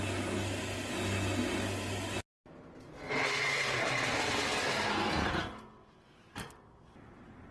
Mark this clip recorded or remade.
recorded